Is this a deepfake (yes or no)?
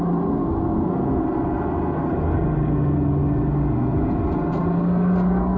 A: no